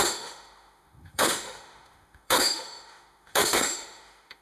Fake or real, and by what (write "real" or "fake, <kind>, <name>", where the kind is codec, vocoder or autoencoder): fake, autoencoder, DAC-VAE